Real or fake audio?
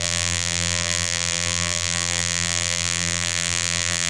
fake